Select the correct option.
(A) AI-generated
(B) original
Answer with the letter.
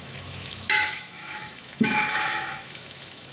A